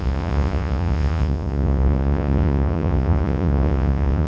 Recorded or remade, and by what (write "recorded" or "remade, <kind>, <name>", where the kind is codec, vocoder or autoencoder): remade, vocoder, Vocos